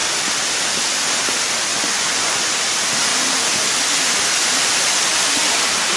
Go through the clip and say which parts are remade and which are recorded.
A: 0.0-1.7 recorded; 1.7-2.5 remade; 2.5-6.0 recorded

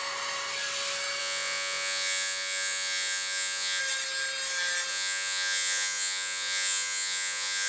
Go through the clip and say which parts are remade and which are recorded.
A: 0.0-1.2 recorded; 1.2-3.8 remade; 3.8-4.9 recorded; 4.9-7.7 remade